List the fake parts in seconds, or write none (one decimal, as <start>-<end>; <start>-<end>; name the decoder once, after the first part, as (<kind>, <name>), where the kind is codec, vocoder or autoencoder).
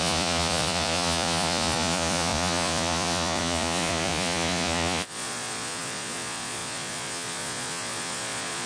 0.0-8.7 (vocoder, Vocos)